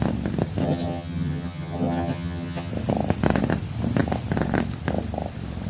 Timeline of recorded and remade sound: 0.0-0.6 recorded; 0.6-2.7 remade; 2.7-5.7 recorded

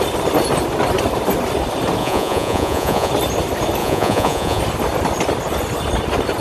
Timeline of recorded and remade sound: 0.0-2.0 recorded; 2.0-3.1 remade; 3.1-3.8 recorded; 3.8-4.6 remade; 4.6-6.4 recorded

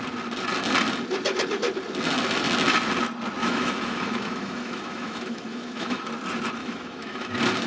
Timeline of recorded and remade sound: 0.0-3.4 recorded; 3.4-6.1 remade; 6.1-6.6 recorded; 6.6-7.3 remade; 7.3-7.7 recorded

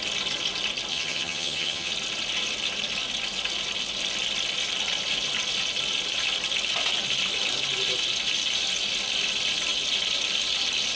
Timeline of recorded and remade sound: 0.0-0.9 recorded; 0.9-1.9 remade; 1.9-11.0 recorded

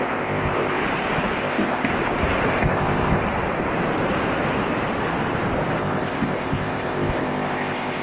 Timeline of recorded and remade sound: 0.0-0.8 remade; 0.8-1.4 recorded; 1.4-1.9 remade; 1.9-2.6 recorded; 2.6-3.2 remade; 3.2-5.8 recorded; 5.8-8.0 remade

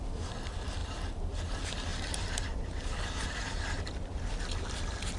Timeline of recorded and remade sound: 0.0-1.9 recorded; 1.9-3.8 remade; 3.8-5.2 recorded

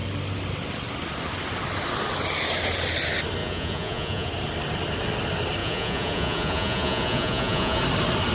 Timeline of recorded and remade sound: 0.0-3.4 recorded; 3.4-4.3 remade; 4.3-5.6 recorded; 5.6-7.8 remade; 7.8-8.3 recorded